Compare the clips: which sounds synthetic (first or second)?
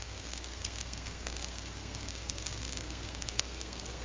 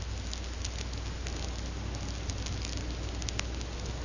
first